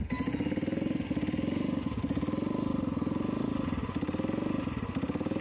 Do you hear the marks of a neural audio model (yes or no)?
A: no